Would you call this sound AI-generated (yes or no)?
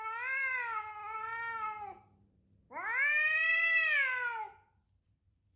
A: no